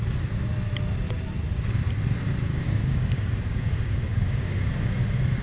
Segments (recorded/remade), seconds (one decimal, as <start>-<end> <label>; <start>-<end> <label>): 0.0-2.5 recorded; 2.5-4.9 remade; 4.9-5.4 recorded